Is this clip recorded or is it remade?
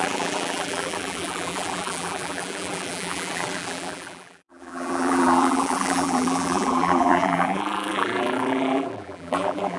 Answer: remade